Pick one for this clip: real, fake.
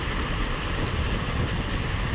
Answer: real